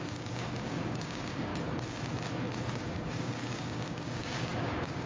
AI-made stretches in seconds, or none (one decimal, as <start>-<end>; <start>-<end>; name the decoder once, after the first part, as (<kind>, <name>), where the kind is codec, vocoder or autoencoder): 0.0-1.5 (codec, DAC); 2.7-5.1